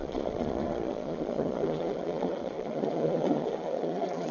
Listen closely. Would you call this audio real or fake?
fake